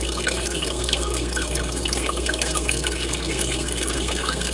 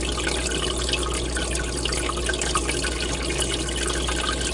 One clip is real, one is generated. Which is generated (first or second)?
first